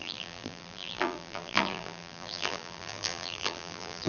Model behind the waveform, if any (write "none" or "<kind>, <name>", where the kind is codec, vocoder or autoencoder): vocoder, BigVGAN v2